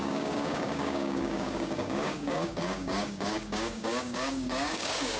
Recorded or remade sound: remade